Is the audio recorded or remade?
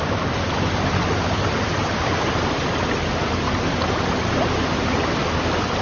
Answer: recorded